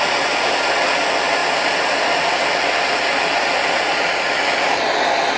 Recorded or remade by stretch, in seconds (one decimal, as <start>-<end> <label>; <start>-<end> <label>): 0.0-5.4 recorded

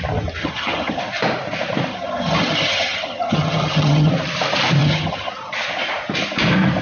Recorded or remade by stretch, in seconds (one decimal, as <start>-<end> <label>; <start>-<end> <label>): 0.0-0.4 recorded; 0.4-1.0 remade; 1.0-1.9 recorded; 1.9-4.1 remade; 4.1-4.8 recorded; 4.8-5.3 remade; 5.3-6.8 recorded

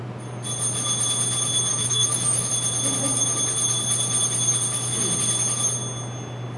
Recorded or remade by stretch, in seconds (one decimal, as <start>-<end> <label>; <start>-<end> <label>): 0.0-1.7 recorded; 1.7-2.5 remade; 2.5-6.6 recorded

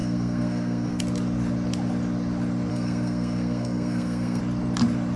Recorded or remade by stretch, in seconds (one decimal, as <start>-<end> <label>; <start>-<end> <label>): 0.0-1.0 remade; 1.0-2.7 recorded; 2.7-4.4 remade; 4.4-5.2 recorded

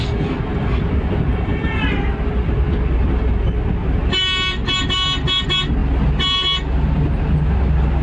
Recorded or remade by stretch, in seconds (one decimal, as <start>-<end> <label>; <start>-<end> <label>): 0.0-8.0 recorded

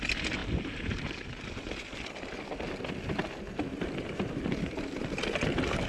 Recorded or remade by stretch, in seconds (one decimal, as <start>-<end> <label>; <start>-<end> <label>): 0.0-0.4 recorded; 0.4-2.0 remade; 2.0-3.7 recorded; 3.7-4.3 remade; 4.3-5.9 recorded